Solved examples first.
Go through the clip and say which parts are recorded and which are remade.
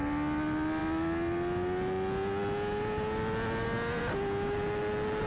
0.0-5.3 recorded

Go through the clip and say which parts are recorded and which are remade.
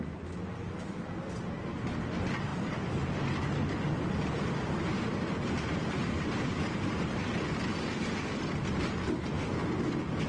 0.0-5.8 recorded; 5.8-7.2 remade; 7.2-10.3 recorded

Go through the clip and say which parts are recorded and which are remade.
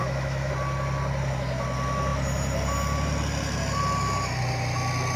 0.0-0.5 remade; 0.5-5.2 recorded